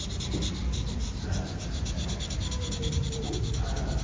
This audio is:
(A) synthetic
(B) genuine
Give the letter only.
B